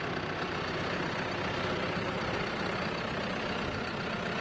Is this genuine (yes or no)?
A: yes